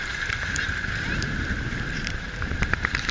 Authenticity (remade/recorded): remade